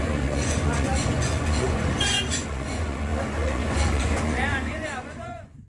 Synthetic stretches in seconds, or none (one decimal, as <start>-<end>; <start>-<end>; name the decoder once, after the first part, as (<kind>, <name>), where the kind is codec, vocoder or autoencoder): 0.0-5.7 (vocoder, Vocos)